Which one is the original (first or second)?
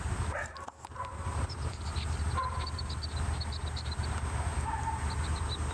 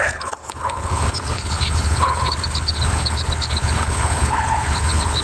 first